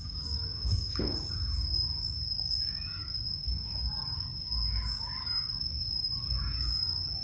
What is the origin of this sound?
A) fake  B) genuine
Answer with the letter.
A